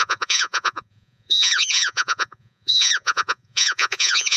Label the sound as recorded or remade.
remade